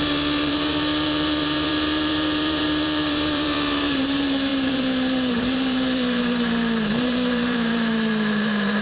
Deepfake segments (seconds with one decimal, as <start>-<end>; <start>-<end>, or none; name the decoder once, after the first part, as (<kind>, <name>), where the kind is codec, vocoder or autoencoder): 0.0-8.8 (vocoder, BigVGAN v2)